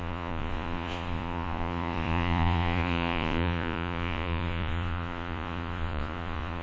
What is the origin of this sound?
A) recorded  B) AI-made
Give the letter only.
B